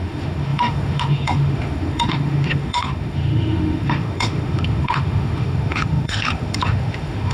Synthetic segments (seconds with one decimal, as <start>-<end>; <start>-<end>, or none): 0.0-7.3